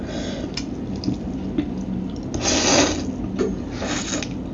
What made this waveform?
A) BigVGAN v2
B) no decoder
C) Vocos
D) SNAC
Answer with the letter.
B